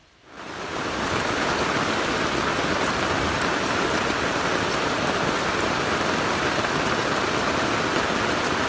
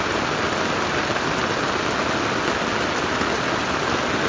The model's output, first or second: first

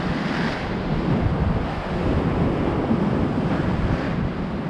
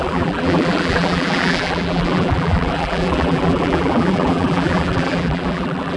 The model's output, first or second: second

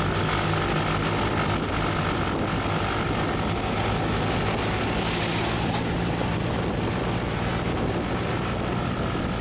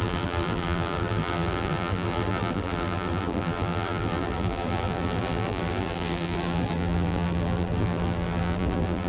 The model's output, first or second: second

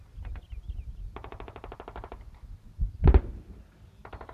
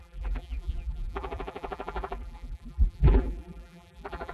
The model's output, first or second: second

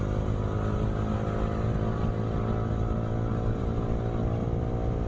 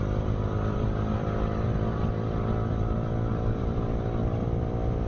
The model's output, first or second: second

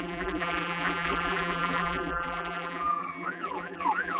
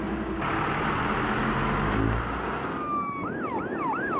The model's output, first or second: first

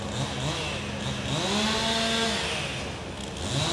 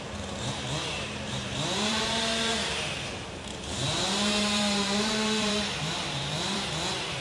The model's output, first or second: second